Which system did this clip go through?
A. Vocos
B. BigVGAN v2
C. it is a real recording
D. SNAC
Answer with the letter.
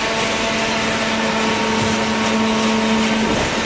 C